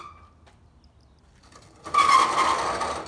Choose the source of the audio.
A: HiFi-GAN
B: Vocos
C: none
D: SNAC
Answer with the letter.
C